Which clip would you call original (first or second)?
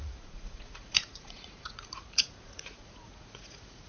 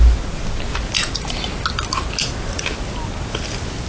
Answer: second